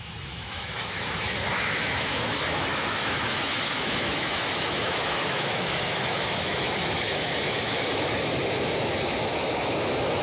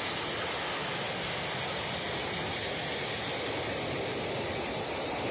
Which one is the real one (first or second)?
second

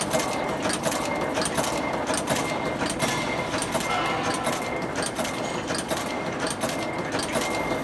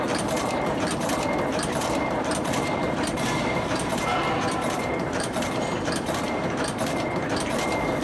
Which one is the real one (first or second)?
first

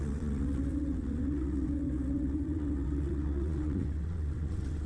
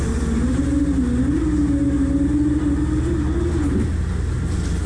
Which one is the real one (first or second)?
second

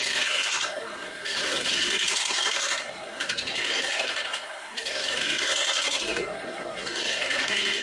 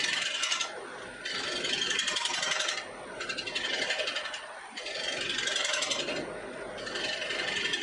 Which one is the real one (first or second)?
second